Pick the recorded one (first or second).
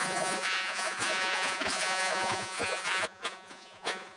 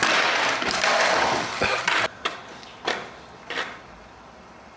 second